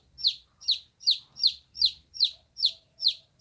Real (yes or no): yes